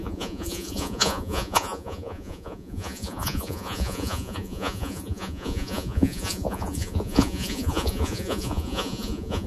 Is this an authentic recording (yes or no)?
no